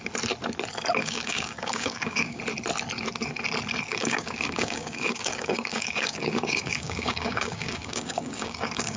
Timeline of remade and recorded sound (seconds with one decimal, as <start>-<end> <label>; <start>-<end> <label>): 0.0-1.0 recorded; 1.0-2.4 remade; 2.4-3.9 recorded; 3.9-9.0 remade